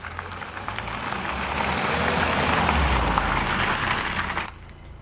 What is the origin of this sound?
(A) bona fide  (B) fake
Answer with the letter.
A